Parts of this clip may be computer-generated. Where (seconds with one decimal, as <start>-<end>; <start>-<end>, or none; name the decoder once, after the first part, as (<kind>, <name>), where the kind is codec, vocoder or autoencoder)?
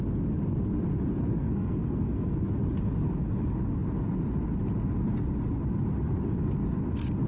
1.3-2.4 (codec, SNAC)